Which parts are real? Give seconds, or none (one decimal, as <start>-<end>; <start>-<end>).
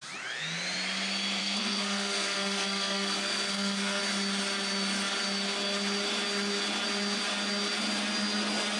0.0-1.4; 4.0-8.8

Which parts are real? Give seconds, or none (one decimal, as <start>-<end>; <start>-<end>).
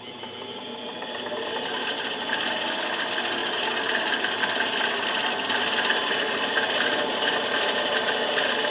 0.0-8.7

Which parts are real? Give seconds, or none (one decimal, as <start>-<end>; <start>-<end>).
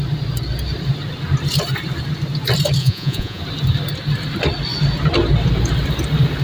0.0-2.8; 3.4-6.4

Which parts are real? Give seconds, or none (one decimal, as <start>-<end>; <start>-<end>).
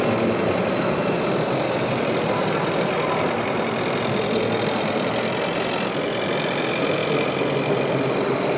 0.0-8.6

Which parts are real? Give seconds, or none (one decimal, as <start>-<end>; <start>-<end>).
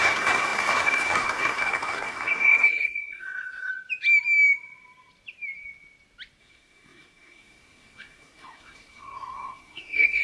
3.7-6.4